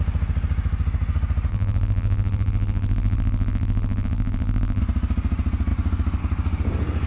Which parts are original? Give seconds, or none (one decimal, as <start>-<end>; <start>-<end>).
0.0-1.5; 4.8-7.1